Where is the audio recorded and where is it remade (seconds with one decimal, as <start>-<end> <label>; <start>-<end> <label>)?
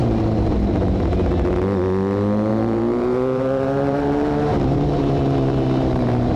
0.0-1.0 remade; 1.0-2.5 recorded; 2.5-6.4 remade